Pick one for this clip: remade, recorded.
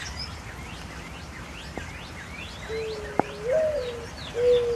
recorded